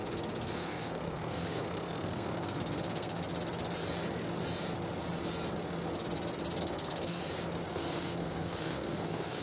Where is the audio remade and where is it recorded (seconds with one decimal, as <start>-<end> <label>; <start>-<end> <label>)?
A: 0.0-3.2 remade; 3.2-6.6 recorded; 6.6-7.2 remade; 7.2-7.7 recorded; 7.7-9.4 remade